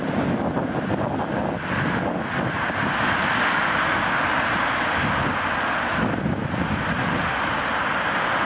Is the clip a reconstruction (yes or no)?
no